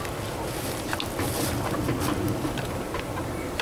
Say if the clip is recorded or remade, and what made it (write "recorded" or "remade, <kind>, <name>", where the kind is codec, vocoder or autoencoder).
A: recorded